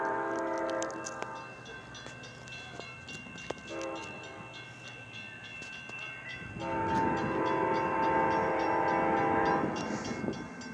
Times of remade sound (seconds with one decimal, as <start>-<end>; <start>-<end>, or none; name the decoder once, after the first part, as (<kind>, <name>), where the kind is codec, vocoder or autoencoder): none